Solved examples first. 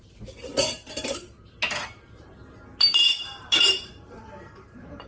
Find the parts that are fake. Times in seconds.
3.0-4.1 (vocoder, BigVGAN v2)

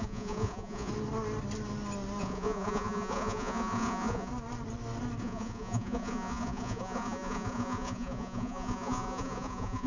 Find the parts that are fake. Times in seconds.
0.0-0.9 (vocoder, Vocos); 2.2-4.3; 5.2-9.9

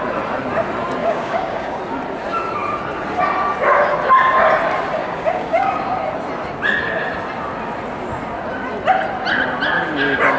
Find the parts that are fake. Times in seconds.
1.0-1.8 (codec, DAC); 5.0-5.7

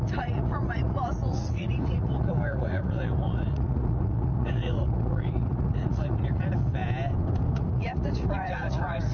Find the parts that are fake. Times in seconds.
0.0-6.8 (vocoder, Vocos); 7.5-9.1

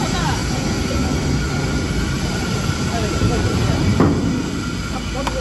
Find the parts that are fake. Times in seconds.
0.0-0.4 (vocoder, BigVGAN v2); 2.2-3.9